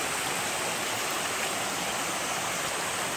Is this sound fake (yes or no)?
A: no